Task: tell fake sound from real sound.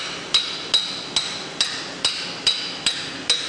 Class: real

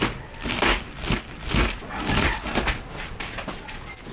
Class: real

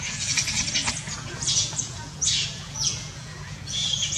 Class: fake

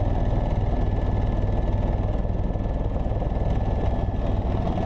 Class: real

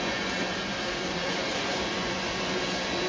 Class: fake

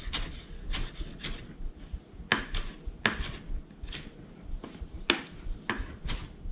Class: real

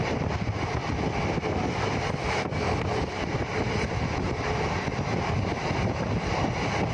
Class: real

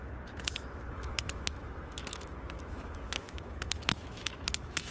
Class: fake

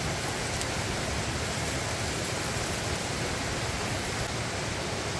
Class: real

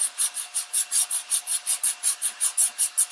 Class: real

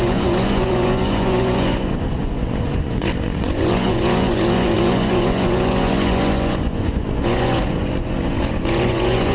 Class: fake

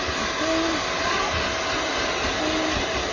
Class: real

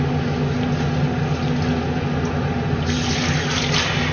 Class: real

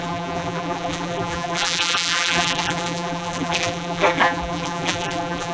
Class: fake